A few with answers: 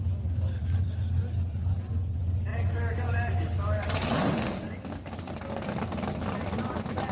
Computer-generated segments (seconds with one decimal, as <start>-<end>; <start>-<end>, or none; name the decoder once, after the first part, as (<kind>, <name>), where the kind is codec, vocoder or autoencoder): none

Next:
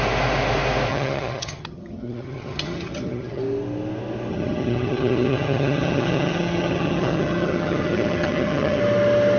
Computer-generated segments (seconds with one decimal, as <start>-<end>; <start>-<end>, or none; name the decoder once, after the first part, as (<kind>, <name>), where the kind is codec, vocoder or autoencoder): 0.9-3.4 (vocoder, HiFi-GAN); 4.3-8.8

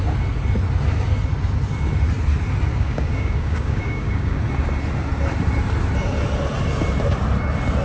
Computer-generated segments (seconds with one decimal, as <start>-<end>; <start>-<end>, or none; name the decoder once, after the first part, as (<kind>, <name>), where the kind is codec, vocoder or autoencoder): 2.7-4.4 (codec, DAC)

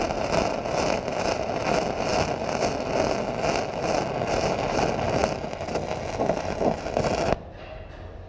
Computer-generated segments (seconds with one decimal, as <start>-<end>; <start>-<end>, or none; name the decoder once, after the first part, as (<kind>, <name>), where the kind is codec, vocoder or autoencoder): none